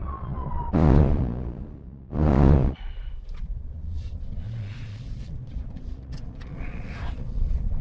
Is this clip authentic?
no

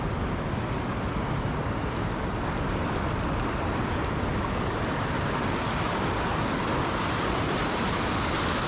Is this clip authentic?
yes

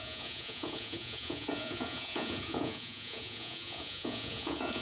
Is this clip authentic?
no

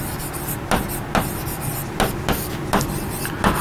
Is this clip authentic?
yes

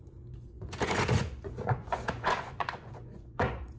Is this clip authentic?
no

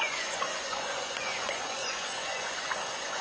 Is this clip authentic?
no